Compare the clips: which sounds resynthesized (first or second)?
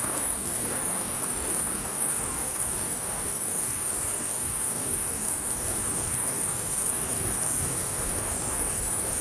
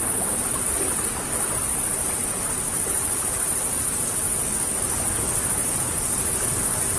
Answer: first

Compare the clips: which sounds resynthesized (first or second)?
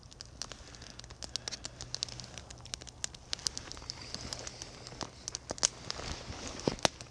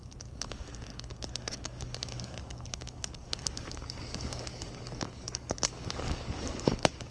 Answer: second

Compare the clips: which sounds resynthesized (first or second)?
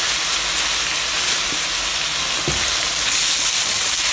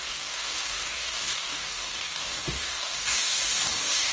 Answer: second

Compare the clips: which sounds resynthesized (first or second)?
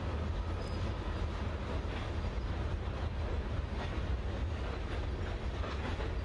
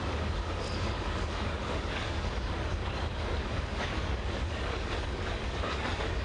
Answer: second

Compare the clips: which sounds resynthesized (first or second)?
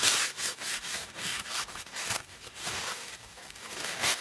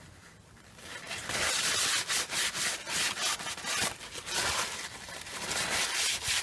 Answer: first